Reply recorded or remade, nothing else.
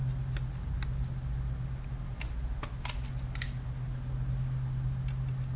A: recorded